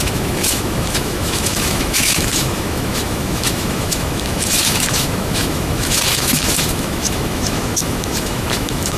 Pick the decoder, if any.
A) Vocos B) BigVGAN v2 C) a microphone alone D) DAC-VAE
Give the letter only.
D